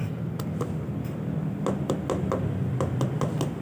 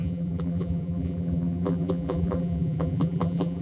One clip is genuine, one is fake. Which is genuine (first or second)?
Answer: first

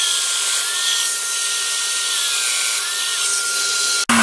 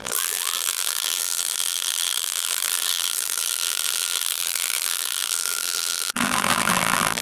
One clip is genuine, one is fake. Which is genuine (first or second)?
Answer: first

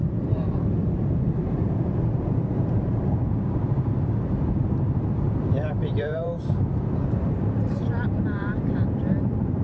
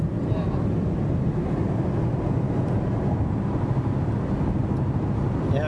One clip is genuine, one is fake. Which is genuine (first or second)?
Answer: second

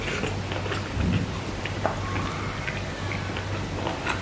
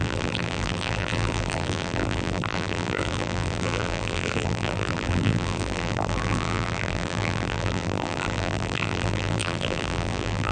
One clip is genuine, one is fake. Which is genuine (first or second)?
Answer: first